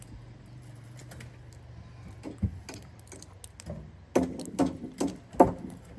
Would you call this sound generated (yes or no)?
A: no